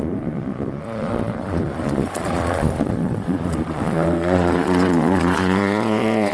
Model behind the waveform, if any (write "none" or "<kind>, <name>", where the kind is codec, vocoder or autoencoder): vocoder, Vocos